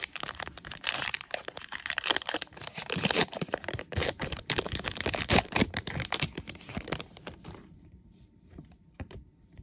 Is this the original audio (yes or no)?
no